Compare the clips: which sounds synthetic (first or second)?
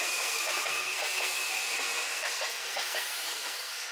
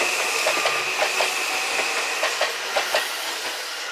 first